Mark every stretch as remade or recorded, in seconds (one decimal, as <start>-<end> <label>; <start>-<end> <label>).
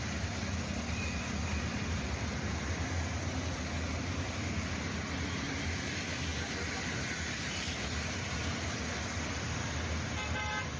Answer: 0.0-10.8 recorded